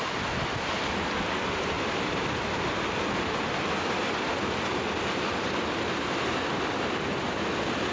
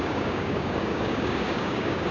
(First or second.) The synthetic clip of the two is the second